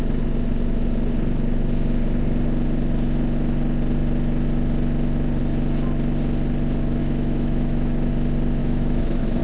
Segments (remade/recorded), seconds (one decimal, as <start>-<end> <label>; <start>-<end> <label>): 0.0-7.0 recorded; 7.0-8.1 remade; 8.1-8.6 recorded; 8.6-9.4 remade